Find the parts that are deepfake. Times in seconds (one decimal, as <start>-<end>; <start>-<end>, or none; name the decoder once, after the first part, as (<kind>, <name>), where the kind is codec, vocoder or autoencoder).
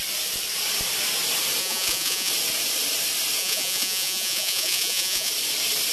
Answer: 1.6-2.3 (vocoder, Vocos); 3.4-5.3